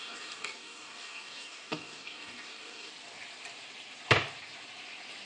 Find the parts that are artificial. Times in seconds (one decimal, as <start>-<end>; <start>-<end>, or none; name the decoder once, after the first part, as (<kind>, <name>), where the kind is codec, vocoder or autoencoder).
0.0-2.9 (codec, DAC)